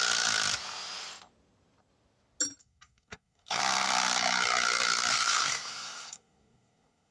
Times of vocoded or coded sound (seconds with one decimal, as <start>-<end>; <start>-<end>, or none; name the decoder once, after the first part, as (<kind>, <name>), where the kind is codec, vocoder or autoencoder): 2.6-3.6 (codec, SNAC); 5.1-7.1